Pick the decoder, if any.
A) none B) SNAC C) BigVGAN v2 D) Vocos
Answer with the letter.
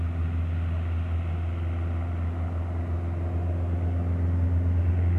A